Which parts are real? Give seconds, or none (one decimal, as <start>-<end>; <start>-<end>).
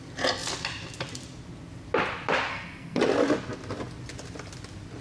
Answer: 0.0-2.5; 3.0-5.0